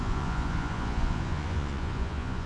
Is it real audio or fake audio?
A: fake